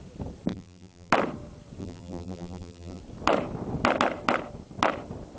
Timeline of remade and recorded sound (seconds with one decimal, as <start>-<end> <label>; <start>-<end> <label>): 0.0-0.5 recorded; 0.5-1.1 remade; 1.1-1.8 recorded; 1.8-3.0 remade; 3.0-5.4 recorded

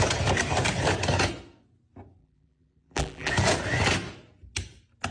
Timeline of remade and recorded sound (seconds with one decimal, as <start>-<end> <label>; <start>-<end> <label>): 0.0-2.2 recorded; 2.2-3.3 remade; 3.3-5.1 recorded

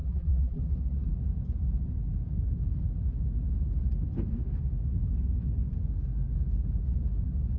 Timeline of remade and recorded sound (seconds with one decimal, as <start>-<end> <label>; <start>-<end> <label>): 0.0-0.6 remade; 0.6-7.6 recorded

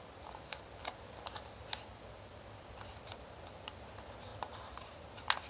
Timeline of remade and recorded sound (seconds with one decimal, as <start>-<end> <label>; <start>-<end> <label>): 0.0-4.3 recorded; 4.3-5.1 remade; 5.1-5.5 recorded